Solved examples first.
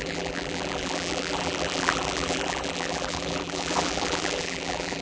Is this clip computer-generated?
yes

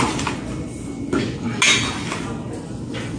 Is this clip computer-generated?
no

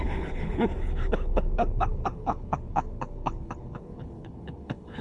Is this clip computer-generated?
yes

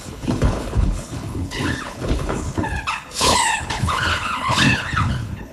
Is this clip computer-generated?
yes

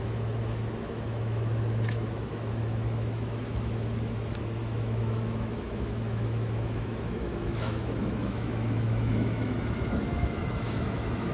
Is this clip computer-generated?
yes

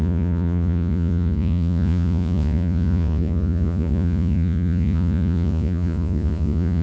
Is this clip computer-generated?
yes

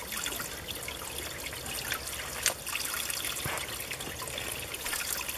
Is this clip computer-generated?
no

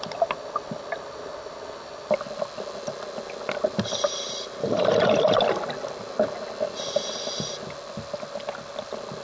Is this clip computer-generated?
no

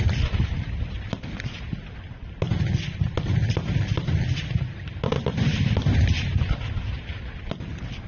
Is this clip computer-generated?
no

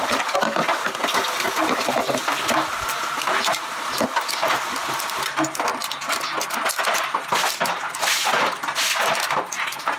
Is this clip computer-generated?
no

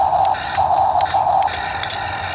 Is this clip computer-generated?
no